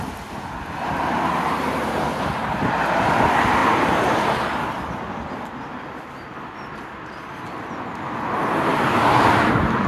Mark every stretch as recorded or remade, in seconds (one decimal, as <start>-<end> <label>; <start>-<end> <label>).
0.0-8.7 recorded; 8.7-9.9 remade